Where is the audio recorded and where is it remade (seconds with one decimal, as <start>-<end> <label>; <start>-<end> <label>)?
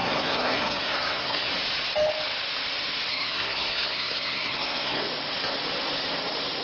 0.0-1.5 remade; 1.5-3.1 recorded; 3.1-5.0 remade; 5.0-6.6 recorded